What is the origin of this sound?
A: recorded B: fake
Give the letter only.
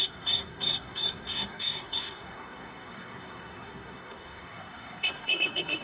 B